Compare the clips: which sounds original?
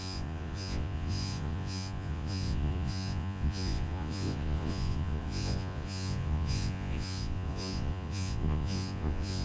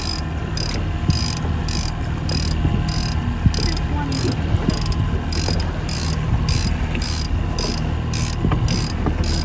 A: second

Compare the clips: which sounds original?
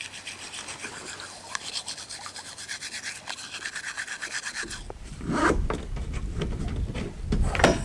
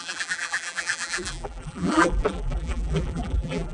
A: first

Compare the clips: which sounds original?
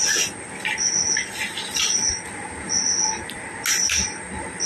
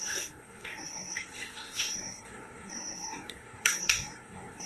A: first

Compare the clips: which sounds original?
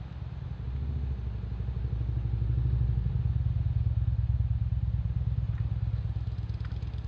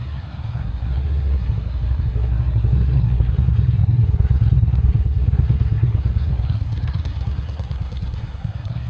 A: first